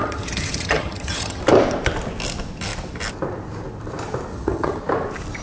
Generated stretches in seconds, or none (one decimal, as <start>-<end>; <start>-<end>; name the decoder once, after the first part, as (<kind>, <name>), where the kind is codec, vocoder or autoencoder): 0.0-1.4 (vocoder, HiFi-GAN); 4.3-4.8